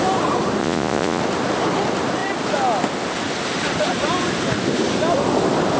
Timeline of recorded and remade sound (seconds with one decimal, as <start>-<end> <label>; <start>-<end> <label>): 0.0-0.6 recorded; 0.6-1.2 remade; 1.2-5.8 recorded